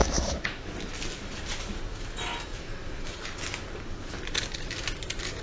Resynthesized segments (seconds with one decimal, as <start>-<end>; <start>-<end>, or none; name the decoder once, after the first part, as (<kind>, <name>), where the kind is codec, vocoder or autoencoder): 0.0-0.7 (autoencoder, DAC-VAE)